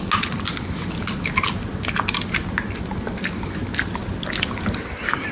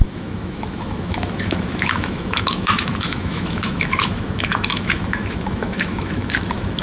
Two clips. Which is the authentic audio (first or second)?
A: first